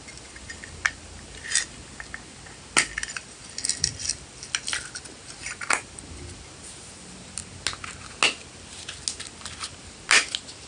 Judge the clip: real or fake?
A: real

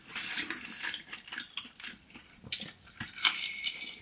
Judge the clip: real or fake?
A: fake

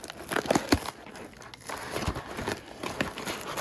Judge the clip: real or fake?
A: real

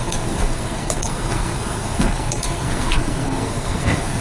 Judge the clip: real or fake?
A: fake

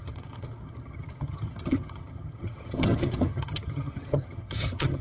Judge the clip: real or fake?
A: fake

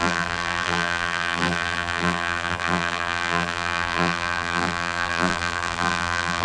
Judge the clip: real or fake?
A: fake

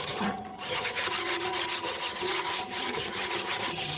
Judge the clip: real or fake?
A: fake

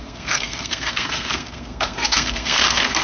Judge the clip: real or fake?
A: fake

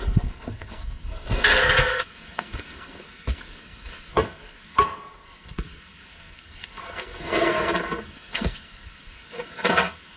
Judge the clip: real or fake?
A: fake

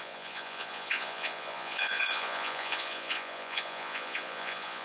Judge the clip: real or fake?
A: fake